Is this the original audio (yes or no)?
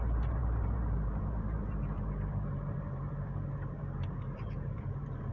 no